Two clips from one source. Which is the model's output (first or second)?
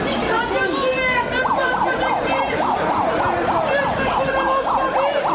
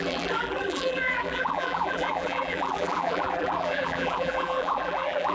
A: second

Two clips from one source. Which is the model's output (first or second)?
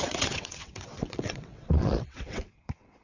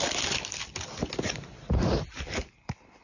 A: first